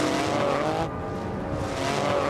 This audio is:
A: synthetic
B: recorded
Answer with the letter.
B